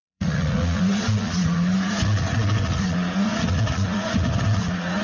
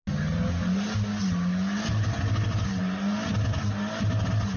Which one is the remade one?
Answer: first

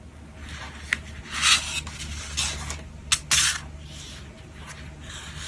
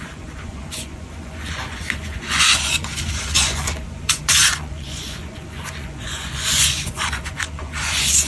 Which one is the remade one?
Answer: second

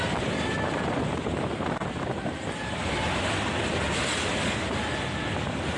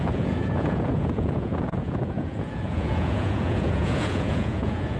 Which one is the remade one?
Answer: second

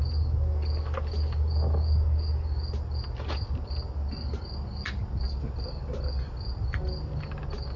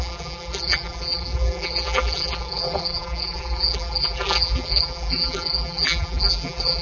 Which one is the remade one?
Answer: second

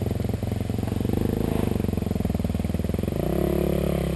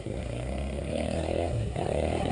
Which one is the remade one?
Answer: second